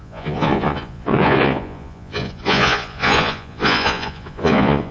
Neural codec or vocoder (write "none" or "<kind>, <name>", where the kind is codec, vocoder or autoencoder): vocoder, Vocos